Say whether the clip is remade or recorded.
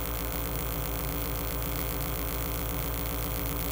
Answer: remade